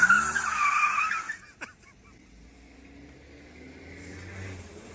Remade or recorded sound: recorded